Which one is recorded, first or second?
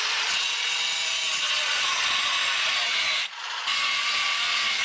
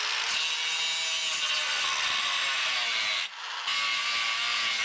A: second